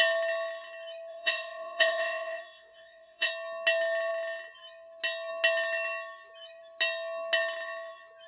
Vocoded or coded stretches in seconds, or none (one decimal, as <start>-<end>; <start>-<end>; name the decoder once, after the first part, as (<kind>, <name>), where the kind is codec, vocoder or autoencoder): 1.1-3.3 (vocoder, WaveNeXt)